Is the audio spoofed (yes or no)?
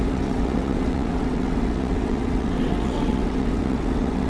yes